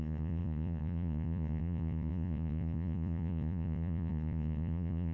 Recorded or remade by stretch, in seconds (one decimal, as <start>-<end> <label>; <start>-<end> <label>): 0.0-5.1 remade

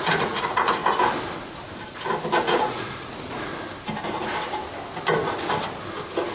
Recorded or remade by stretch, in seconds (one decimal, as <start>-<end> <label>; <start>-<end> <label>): 0.0-0.8 remade; 0.8-2.4 recorded; 2.4-3.5 remade; 3.5-6.3 recorded

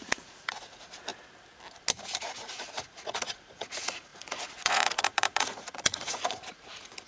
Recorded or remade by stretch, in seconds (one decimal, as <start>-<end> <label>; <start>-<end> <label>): 0.0-1.1 remade; 1.1-2.0 recorded; 2.0-7.1 remade